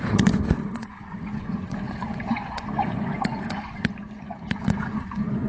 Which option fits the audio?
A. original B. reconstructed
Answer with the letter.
B